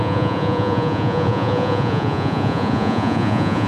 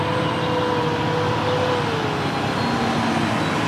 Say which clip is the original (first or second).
second